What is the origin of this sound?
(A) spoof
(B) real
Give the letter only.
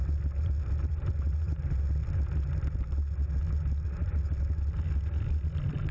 B